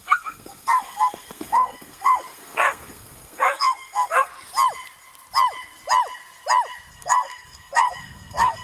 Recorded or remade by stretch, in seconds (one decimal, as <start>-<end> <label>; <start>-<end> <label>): 0.0-4.3 remade; 4.3-6.9 recorded; 6.9-8.6 remade